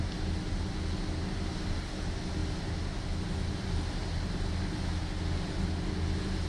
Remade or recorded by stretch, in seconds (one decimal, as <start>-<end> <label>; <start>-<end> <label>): 0.0-6.5 recorded